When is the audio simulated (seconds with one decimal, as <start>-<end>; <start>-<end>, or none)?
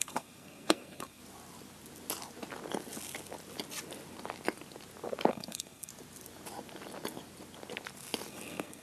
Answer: 0.0-1.2; 5.3-5.9; 8.3-8.8